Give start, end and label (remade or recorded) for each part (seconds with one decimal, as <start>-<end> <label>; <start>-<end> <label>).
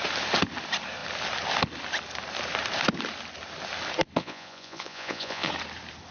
0.0-4.2 recorded; 4.2-5.5 remade; 5.5-6.1 recorded